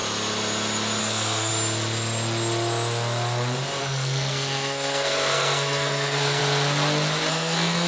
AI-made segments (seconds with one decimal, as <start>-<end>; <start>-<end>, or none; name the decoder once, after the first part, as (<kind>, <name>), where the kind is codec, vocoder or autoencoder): 1.0-1.5 (codec, SNAC); 3.8-6.4; 7.3-7.9